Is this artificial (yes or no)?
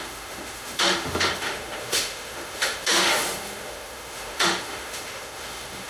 yes